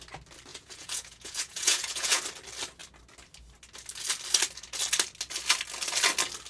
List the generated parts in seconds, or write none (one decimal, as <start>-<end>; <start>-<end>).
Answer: 0.5-2.2